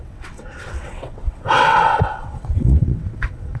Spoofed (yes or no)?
yes